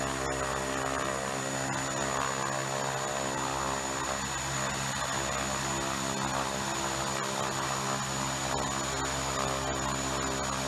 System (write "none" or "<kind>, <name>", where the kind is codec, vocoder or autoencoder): none